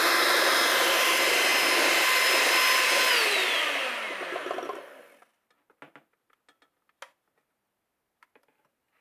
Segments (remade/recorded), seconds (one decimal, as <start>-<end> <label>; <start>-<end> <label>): 0.0-9.0 recorded